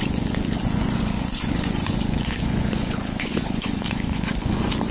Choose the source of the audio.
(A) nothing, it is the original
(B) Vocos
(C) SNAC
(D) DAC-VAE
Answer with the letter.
B